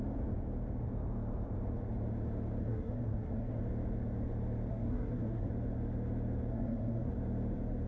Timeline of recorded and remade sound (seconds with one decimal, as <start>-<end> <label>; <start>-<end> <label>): 0.0-2.6 recorded; 2.6-3.6 remade; 3.6-4.7 recorded; 4.7-5.5 remade; 5.5-6.5 recorded; 6.5-7.1 remade; 7.1-7.9 recorded